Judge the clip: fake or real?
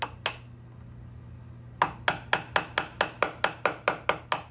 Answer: real